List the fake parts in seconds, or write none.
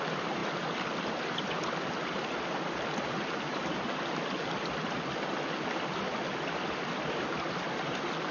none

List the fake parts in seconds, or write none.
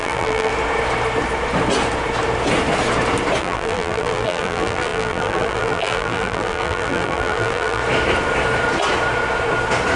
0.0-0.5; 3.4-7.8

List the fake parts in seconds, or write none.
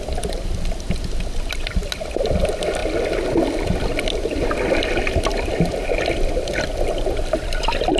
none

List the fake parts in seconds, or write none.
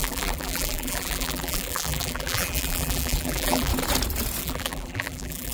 0.0-3.7; 4.4-5.5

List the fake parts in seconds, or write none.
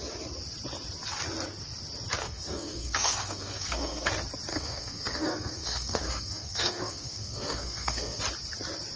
2.2-4.1; 4.5-8.2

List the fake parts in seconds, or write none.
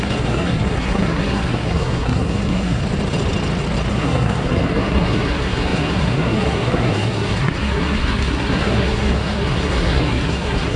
0.0-2.8; 3.9-10.8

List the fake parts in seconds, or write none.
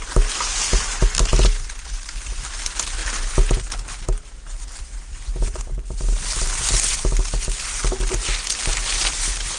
none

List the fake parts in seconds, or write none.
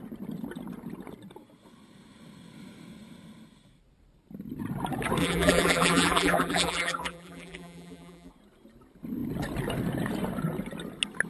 5.2-8.3